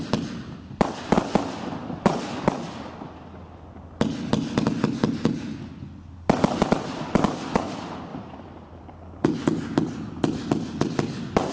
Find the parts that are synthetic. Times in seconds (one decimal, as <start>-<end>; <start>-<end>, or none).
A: 8.1-8.9

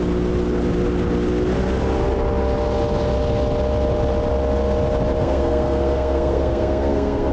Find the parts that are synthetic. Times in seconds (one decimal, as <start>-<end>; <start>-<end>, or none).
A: 5.2-7.3

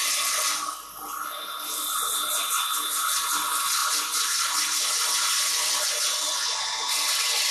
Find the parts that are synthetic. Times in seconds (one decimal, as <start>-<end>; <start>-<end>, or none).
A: none

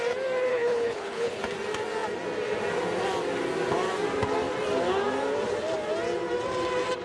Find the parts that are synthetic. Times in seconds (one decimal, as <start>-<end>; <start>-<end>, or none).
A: 0.5-1.4

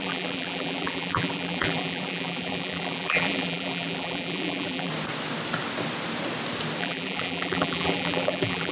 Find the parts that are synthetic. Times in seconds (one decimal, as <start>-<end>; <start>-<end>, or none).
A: 0.0-4.9; 6.8-8.7

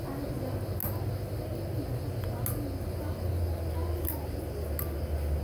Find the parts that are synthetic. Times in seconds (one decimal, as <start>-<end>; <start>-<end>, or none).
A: none

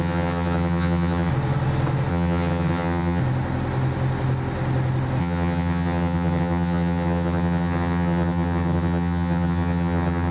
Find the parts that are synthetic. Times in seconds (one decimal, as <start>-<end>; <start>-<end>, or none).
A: 0.0-1.3; 2.1-3.2; 5.2-10.3